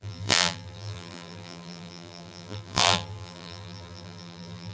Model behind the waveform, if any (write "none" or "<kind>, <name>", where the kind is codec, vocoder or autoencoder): vocoder, BigVGAN v2